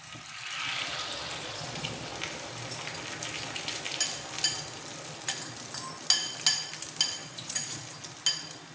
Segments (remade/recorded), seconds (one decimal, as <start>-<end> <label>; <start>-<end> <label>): 0.0-1.4 recorded; 1.4-1.9 remade; 1.9-7.2 recorded; 7.2-7.8 remade; 7.8-8.7 recorded